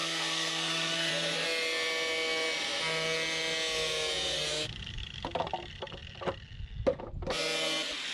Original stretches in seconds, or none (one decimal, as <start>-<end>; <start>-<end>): 1.1-8.1